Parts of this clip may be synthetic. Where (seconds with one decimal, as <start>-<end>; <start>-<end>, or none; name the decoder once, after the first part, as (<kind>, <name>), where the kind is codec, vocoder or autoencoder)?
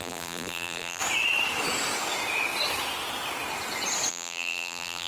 0.0-1.0 (vocoder, BigVGAN v2); 4.1-5.1